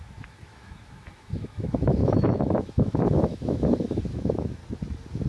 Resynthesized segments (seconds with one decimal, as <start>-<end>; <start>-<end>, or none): 0.0-4.6